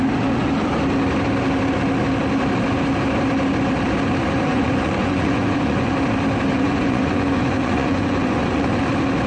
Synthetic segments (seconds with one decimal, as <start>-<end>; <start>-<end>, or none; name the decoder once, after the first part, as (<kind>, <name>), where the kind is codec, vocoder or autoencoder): 4.5-5.9 (vocoder, Vocos); 6.5-8.8